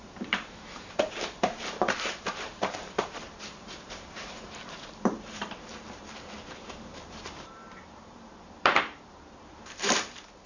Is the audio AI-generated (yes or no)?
yes